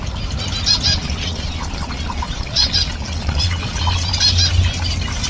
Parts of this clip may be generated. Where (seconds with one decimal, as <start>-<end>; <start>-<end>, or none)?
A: 0.9-4.1